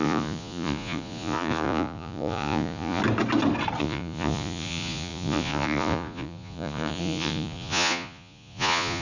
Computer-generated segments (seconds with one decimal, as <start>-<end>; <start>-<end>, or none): 0.0-3.0; 3.8-9.0